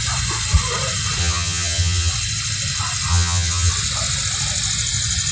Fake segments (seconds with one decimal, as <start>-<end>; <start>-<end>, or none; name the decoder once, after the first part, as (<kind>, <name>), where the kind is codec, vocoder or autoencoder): 1.2-2.1 (vocoder, HiFi-GAN); 3.1-3.7

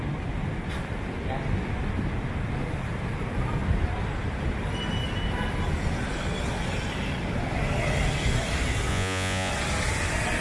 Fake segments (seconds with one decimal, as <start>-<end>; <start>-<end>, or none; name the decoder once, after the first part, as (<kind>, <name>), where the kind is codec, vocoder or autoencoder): 8.9-9.5 (vocoder, Vocos)

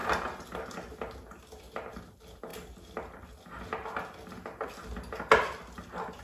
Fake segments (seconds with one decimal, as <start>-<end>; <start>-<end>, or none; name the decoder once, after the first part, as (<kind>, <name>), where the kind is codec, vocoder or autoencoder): none

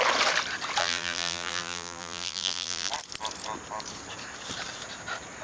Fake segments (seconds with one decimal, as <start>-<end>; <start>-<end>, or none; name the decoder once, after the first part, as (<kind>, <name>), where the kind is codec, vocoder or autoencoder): 0.8-2.9 (vocoder, BigVGAN v2)

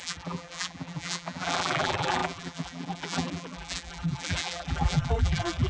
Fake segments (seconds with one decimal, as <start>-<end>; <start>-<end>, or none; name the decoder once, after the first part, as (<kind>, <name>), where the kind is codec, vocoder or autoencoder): 0.0-5.7 (vocoder, BigVGAN v2)

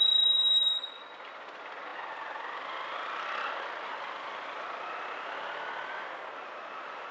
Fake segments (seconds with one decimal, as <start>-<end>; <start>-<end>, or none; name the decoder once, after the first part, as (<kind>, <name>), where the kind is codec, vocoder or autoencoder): none

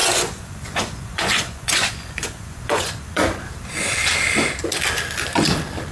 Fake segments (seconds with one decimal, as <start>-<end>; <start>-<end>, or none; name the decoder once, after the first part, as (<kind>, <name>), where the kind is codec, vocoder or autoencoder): 0.0-3.5 (vocoder, Vocos)

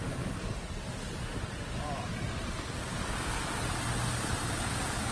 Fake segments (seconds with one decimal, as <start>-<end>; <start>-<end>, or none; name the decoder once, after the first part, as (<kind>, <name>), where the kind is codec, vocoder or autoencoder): none